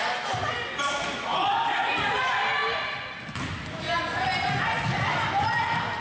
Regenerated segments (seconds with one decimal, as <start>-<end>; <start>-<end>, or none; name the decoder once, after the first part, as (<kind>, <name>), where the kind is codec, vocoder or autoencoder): none